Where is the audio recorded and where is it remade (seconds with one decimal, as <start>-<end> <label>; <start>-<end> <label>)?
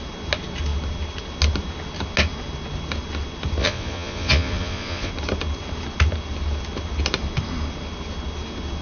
0.0-3.6 recorded; 3.6-5.1 remade; 5.1-8.8 recorded